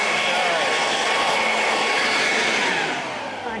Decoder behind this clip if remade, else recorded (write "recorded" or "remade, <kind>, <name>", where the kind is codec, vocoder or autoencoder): recorded